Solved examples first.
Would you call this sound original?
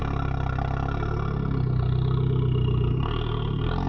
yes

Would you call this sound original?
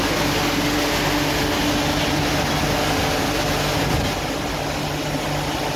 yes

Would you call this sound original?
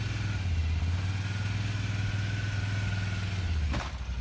yes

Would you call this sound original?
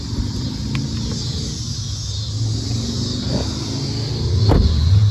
yes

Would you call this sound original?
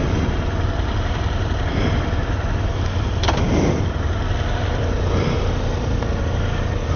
yes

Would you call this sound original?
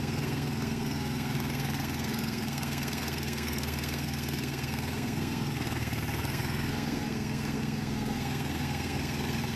no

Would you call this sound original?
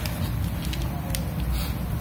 yes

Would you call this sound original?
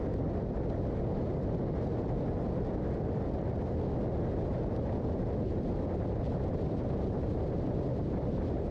yes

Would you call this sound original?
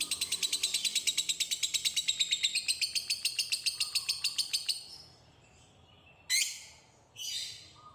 yes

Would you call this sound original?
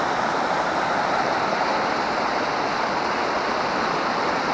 yes